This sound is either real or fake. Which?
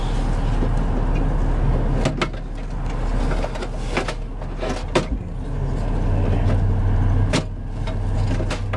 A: real